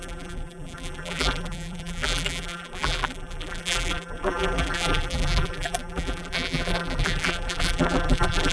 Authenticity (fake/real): fake